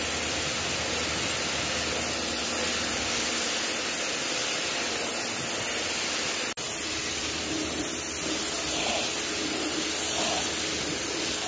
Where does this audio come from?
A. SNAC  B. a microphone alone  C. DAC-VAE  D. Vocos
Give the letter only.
B